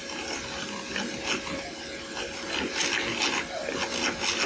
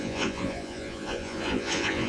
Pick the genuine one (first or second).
first